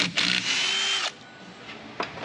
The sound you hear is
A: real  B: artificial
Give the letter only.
A